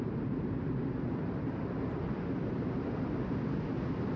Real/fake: real